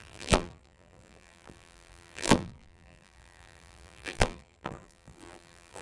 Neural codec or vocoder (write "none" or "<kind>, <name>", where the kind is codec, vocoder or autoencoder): vocoder, BigVGAN v2